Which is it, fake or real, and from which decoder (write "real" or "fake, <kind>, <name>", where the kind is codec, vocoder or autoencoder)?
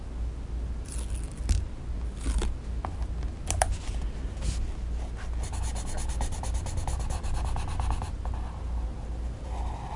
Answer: real